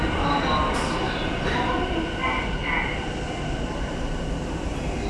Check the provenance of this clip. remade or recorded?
recorded